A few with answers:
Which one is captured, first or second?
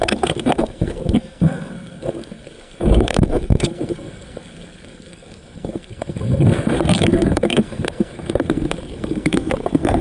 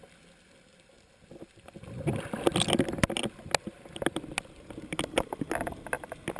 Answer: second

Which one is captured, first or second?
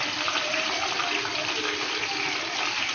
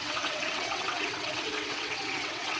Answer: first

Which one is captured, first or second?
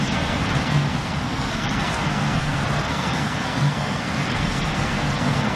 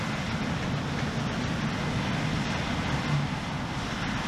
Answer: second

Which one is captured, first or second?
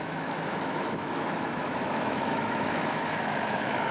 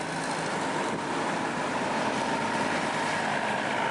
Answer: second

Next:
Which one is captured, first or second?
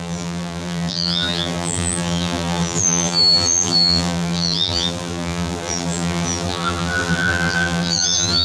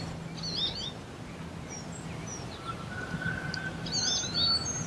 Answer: second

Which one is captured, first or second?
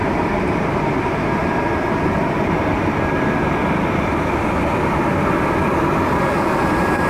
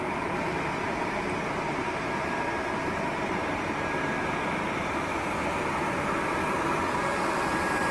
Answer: second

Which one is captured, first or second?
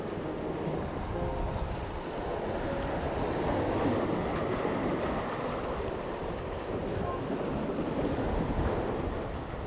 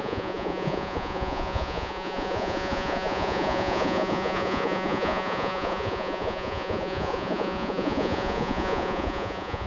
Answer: first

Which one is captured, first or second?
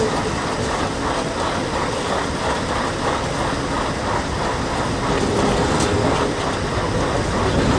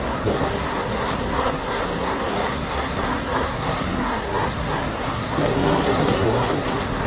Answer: first